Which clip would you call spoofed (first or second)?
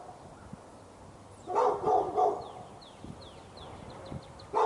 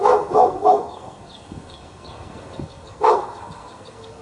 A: second